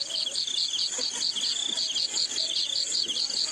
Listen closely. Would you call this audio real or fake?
real